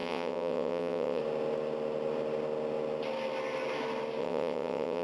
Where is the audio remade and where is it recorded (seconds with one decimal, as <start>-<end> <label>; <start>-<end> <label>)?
0.0-1.2 remade; 1.2-4.2 recorded; 4.2-5.0 remade